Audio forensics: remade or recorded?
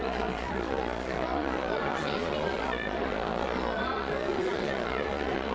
remade